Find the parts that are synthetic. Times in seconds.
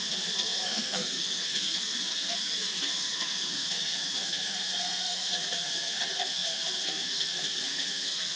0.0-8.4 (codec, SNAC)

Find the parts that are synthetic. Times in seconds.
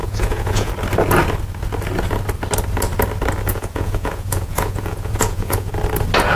0.0-0.7 (vocoder, Vocos); 3.5-5.7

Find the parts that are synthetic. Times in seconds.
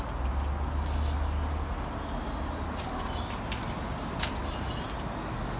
none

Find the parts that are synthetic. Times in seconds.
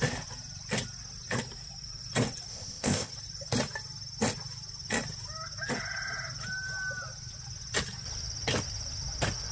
2.5-3.1 (codec, ZipCodec)